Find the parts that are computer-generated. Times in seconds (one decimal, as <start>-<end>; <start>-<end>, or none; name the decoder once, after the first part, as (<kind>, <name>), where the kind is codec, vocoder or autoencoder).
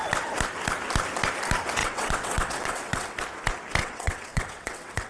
1.8-3.2 (vocoder, WaveNeXt); 3.8-5.1